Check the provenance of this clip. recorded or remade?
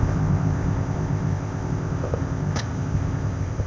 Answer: remade